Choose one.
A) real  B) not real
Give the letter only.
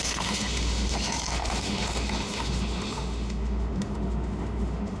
B